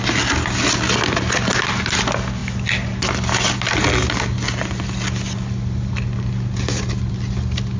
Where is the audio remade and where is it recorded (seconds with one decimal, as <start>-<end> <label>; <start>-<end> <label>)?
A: 0.0-7.8 recorded